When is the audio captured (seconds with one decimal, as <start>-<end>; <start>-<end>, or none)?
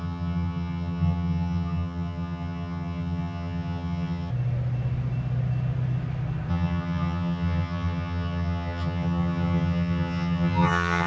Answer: 4.3-6.5